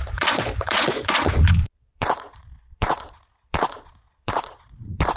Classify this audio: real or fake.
fake